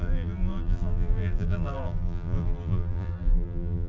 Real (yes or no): no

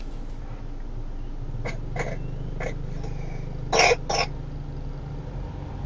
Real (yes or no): yes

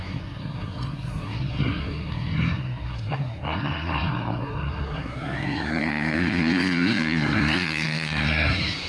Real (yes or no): no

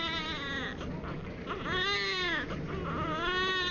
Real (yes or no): yes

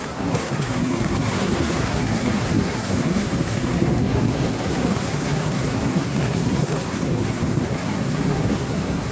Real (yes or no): no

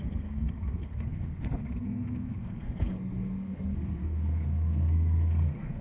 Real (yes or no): no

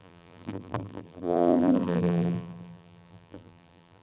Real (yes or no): no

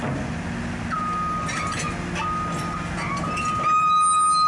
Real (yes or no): yes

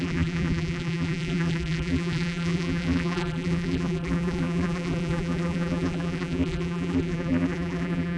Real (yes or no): no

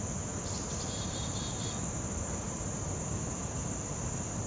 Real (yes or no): no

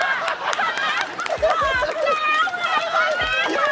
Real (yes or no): no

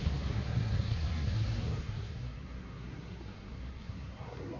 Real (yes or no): no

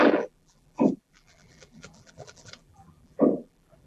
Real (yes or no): no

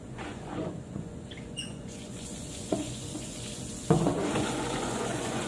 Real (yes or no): no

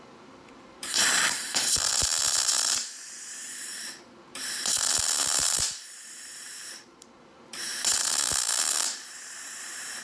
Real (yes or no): no